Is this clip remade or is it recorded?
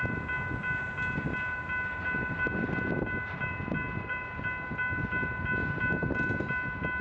recorded